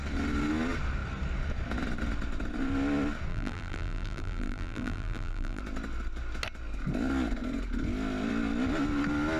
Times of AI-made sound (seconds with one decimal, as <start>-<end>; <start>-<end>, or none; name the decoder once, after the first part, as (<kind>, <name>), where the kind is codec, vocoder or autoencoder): 3.3-5.6 (vocoder, BigVGAN v2)